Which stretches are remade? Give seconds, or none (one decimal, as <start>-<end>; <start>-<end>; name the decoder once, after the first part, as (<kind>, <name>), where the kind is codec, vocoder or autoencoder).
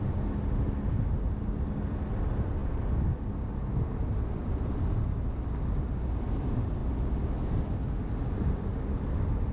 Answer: none